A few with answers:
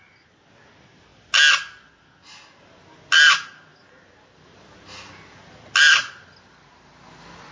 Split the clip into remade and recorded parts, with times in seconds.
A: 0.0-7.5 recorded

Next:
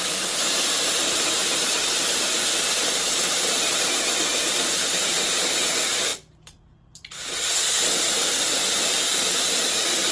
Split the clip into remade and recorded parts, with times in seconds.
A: 0.0-6.1 remade; 6.1-8.1 recorded; 8.1-10.1 remade